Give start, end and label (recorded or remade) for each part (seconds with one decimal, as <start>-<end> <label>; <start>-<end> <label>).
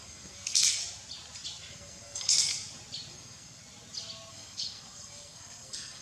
0.0-0.8 remade; 0.8-1.7 recorded; 1.7-2.5 remade; 2.5-3.1 recorded; 3.1-3.6 remade; 3.6-4.3 recorded; 4.3-6.0 remade